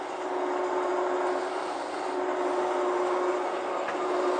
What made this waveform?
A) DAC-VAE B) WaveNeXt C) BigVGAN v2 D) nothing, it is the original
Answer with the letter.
D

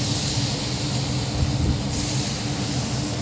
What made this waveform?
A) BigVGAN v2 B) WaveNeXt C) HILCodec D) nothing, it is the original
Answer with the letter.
D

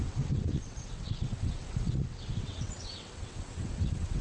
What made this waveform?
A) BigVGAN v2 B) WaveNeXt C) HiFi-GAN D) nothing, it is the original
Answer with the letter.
B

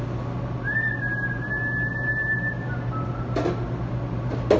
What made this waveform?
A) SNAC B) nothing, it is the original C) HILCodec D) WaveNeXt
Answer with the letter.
B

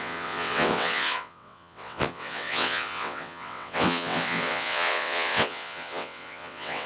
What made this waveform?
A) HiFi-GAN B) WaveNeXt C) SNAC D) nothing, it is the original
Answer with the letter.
B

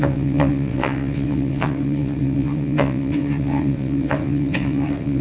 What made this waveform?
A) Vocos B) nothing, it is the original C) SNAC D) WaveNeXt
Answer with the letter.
D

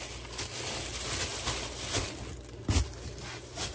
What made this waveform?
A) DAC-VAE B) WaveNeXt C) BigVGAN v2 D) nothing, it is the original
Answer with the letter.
D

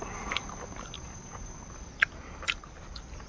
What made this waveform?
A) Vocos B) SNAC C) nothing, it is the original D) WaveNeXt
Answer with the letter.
C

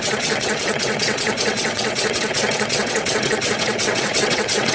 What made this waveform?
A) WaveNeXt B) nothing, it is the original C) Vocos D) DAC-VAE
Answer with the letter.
A